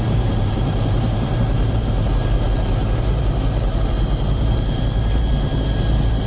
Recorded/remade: remade